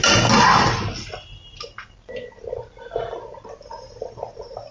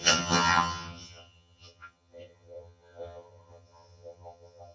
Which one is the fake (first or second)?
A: second